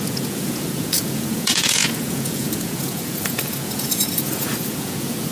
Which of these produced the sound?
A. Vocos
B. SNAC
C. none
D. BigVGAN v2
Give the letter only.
A